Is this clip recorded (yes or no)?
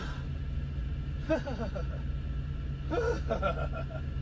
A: yes